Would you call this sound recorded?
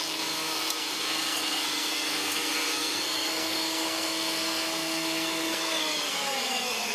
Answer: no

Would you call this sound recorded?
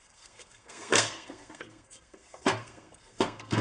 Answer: no